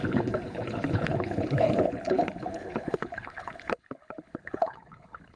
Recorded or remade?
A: remade